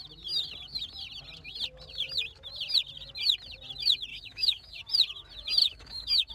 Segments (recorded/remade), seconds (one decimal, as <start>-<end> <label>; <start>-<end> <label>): 0.0-4.1 recorded; 4.1-4.8 remade; 4.8-5.6 recorded; 5.6-6.3 remade